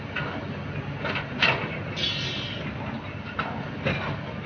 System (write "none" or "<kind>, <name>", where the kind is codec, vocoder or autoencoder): none